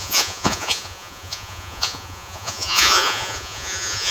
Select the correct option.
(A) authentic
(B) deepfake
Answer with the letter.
B